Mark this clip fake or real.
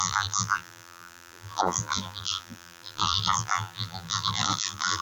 fake